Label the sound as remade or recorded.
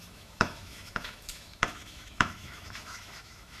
remade